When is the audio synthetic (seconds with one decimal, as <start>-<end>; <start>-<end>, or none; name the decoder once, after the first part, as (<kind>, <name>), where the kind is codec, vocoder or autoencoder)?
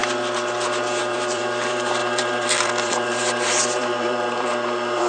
1.0-5.1 (vocoder, BigVGAN v2)